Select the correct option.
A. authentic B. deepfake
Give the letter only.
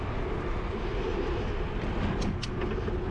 A